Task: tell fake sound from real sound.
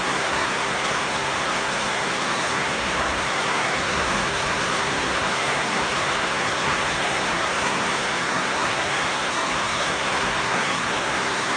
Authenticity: fake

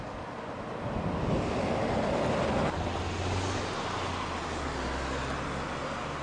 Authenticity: real